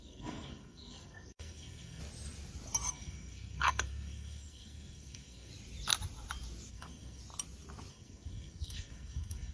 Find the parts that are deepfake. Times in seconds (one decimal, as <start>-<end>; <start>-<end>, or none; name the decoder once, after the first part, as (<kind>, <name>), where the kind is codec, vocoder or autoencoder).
0.0-2.0 (codec, SNAC); 2.9-5.5; 6.7-7.2; 7.9-9.5